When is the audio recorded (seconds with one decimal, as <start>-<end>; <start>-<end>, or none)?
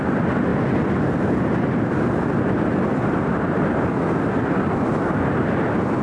0.0-6.0